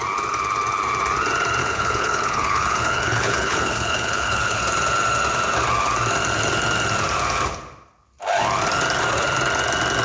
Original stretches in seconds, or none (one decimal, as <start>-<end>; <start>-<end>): 0.0-1.6; 4.6-10.0